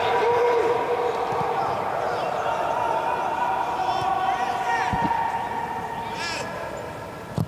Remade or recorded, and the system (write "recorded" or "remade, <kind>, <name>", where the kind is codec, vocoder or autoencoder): recorded